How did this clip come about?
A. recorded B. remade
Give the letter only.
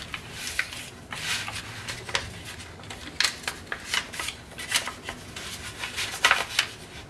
A